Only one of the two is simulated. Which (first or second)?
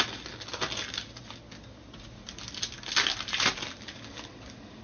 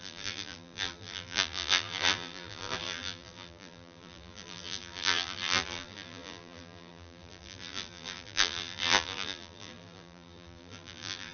second